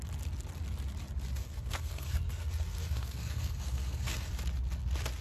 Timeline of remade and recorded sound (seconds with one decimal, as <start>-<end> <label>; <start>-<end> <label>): 0.0-1.4 recorded; 1.4-4.3 remade; 4.3-5.2 recorded